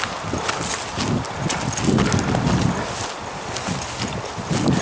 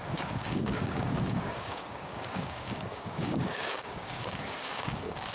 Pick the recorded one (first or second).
first